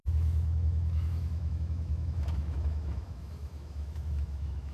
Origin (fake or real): fake